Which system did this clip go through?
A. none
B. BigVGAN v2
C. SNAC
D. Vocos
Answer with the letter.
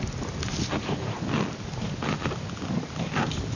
A